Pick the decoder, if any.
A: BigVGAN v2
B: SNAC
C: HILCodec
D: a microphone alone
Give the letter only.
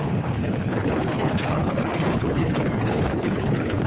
C